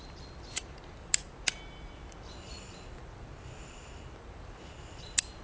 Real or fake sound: fake